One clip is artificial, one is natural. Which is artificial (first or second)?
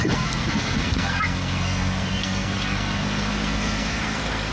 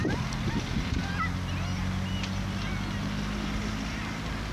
first